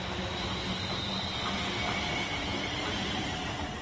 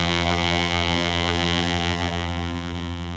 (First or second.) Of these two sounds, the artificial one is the second